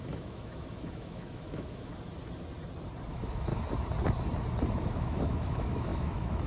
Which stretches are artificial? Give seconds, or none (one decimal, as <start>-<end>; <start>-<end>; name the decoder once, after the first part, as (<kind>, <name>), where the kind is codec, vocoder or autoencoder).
0.0-1.9 (autoencoder, DAC-VAE); 3.1-3.5; 4.8-6.5